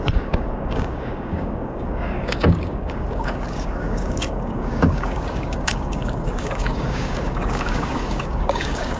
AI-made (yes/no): yes